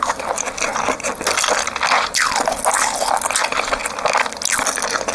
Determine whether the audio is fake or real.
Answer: real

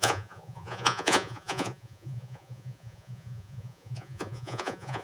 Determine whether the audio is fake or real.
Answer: fake